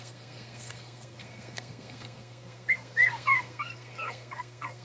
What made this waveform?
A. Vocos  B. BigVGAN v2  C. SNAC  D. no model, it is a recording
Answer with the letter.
C